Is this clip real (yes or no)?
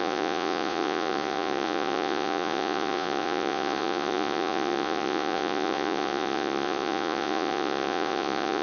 no